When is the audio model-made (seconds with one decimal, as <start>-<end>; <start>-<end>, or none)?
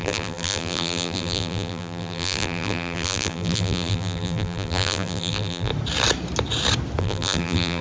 0.0-5.7; 7.0-7.8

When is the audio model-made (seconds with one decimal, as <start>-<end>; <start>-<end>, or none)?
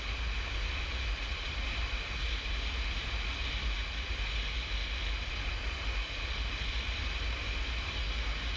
none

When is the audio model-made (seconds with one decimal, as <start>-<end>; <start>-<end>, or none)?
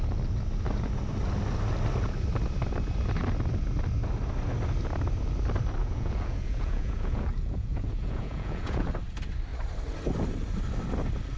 5.8-8.9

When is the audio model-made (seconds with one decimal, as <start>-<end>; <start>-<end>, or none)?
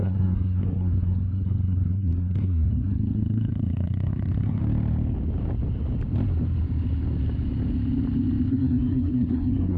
0.0-4.6; 8.5-9.8